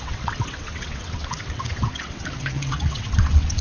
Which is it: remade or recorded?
remade